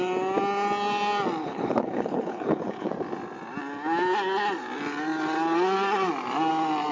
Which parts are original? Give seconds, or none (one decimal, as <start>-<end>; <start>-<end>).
0.0-1.4; 2.9-6.9